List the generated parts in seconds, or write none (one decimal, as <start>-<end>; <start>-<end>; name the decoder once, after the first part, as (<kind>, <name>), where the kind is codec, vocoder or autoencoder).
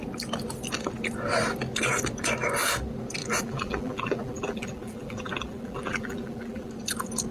3.2-6.7 (vocoder, BigVGAN v2)